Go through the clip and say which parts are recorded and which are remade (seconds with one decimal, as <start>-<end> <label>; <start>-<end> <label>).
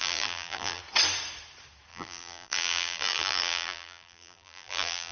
0.0-0.8 remade; 0.8-1.9 recorded; 1.9-5.1 remade